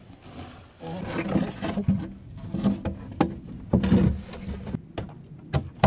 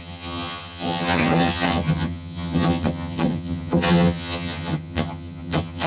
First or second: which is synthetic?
second